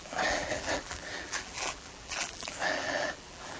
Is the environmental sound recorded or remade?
remade